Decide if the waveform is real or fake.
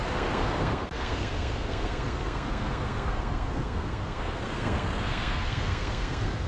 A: fake